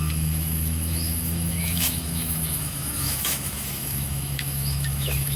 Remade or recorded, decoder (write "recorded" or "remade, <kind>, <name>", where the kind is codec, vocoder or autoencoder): remade, autoencoder, DAC-VAE